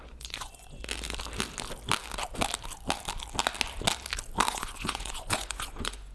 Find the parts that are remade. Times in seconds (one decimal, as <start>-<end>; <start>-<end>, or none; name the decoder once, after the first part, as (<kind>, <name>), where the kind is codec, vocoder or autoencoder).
0.0-0.8 (vocoder, Vocos); 4.5-6.1